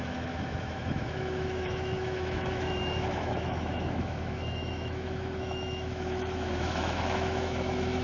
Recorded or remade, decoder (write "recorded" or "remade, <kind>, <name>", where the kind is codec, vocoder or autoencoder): remade, autoencoder, DAC-VAE